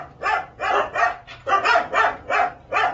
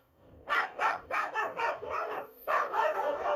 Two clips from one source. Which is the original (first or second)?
first